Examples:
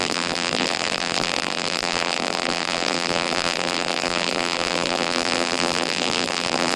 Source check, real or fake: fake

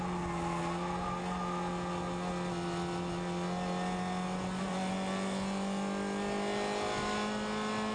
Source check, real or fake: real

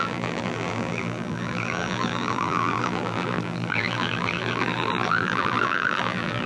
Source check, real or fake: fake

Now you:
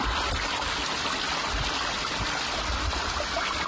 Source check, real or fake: real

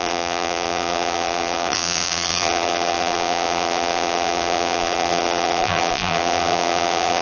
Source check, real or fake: fake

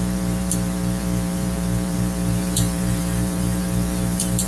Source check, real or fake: fake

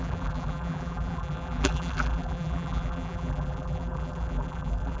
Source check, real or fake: fake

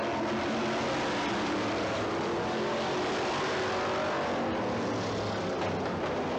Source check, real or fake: real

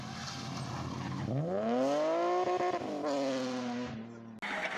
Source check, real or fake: real